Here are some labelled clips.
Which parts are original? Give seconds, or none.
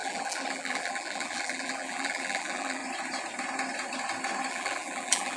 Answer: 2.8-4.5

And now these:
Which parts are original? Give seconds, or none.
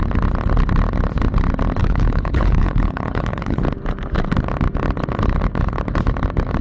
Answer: 0.0-1.8; 3.6-6.6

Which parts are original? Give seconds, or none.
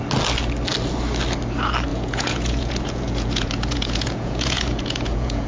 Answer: 0.0-1.9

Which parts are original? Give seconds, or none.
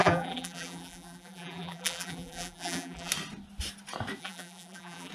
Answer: 3.1-4.2